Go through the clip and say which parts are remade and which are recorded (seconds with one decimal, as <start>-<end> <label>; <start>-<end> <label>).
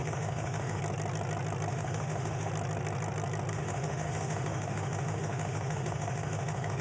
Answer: 0.0-0.8 remade; 0.8-1.7 recorded; 1.7-2.5 remade; 2.5-3.5 recorded; 3.5-6.8 remade